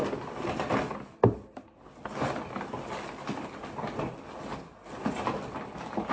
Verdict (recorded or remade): recorded